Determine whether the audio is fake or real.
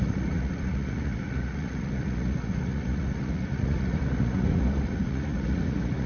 fake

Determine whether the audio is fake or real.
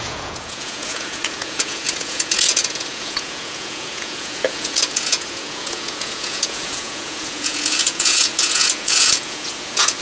fake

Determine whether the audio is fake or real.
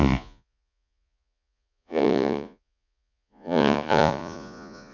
fake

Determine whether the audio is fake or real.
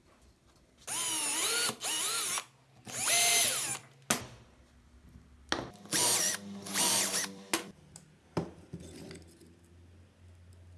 real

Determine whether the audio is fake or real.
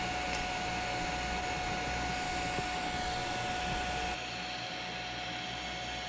real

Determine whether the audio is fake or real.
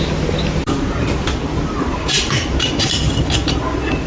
real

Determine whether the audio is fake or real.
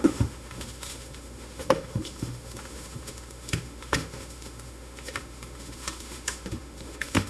fake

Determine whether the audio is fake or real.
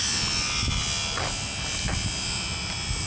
fake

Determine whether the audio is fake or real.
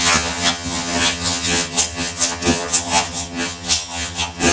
fake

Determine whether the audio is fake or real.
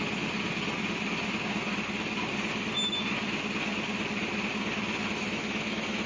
real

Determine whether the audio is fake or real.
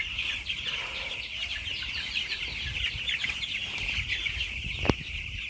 real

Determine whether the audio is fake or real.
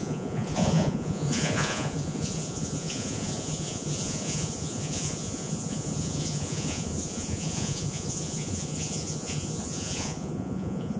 fake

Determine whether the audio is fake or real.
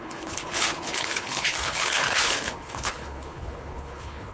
fake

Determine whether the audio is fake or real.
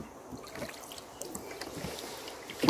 real